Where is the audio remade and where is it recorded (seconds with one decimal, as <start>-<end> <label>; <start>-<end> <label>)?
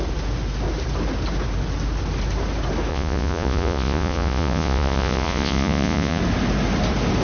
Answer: 0.0-2.9 recorded; 2.9-6.2 remade; 6.2-7.2 recorded